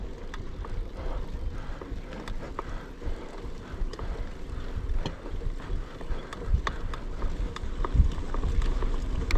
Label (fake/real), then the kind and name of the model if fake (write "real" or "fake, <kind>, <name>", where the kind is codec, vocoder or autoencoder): real